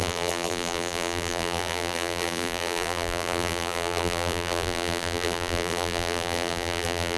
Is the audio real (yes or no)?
no